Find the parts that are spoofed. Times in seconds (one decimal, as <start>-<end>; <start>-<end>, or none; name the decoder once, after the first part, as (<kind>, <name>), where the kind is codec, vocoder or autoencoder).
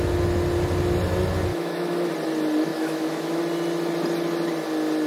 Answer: 1.5-2.1 (autoencoder, DAC-VAE); 2.7-3.4